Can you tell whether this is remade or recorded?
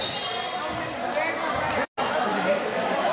recorded